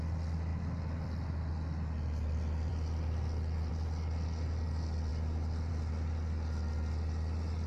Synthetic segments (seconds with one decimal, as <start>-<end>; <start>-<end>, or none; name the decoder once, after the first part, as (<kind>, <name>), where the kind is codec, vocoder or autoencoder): none